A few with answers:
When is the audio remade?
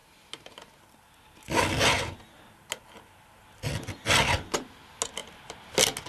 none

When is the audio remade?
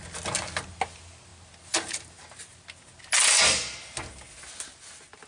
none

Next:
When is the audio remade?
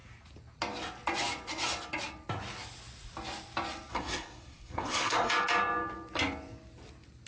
3.9-5.3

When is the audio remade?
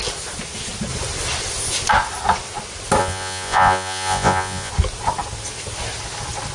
3.0-4.7